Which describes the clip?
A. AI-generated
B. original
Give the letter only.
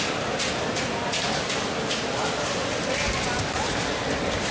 B